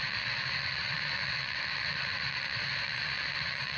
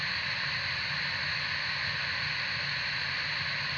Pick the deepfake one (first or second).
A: first